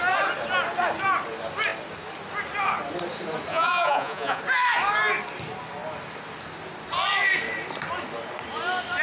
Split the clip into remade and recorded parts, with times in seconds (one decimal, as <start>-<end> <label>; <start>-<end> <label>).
0.0-3.5 recorded; 3.5-4.4 remade; 4.4-9.0 recorded